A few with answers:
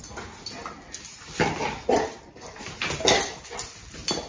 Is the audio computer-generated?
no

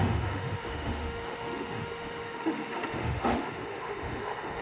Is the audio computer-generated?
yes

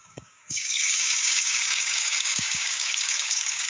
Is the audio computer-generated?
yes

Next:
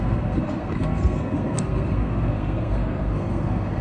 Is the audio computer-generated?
yes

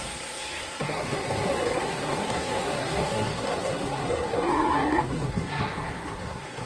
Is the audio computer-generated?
yes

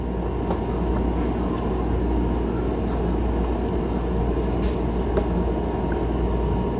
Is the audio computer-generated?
no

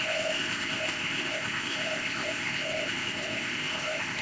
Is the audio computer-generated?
yes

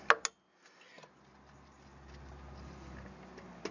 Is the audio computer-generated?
no